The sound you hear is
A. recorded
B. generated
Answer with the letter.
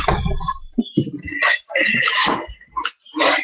A